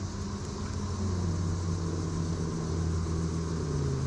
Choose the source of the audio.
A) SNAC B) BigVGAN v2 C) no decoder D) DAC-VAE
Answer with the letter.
C